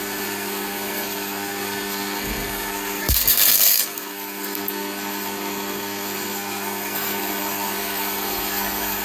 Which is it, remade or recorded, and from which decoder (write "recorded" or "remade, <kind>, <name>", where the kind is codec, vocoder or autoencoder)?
remade, codec, SNAC